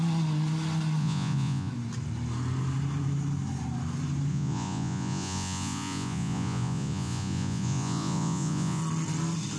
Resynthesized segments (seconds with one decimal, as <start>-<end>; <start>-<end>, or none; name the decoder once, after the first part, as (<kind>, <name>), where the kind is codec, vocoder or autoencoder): 1.0-1.7 (vocoder, Vocos); 4.3-8.8